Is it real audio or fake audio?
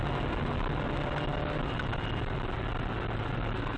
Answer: real